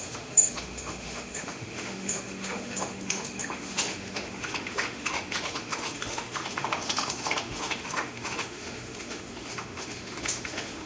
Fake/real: fake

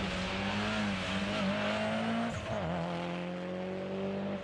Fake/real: real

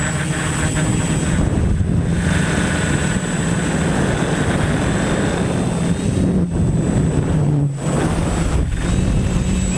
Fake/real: real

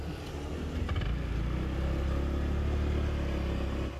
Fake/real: real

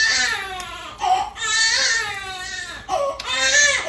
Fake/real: real